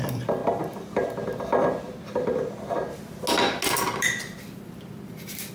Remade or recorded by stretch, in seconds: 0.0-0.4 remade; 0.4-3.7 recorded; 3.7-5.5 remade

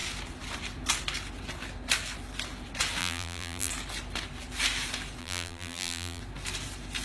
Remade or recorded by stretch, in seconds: 0.0-3.0 recorded; 3.0-3.7 remade; 3.7-5.2 recorded; 5.2-6.2 remade; 6.2-7.0 recorded

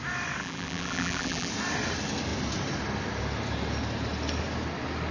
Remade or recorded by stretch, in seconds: 0.0-0.4 recorded; 0.4-1.5 remade; 1.5-5.1 recorded